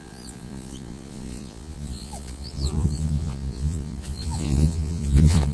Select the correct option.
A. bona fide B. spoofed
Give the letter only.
B